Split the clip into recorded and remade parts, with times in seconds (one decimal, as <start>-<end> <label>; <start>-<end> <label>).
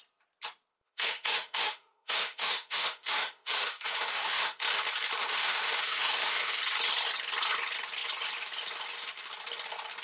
0.0-0.7 recorded; 0.7-4.6 remade; 4.6-5.2 recorded; 5.2-6.6 remade; 6.6-10.0 recorded